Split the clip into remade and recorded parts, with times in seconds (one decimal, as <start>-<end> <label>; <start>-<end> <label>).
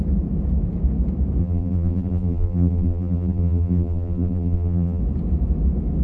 0.0-1.4 recorded; 1.4-5.0 remade; 5.0-6.0 recorded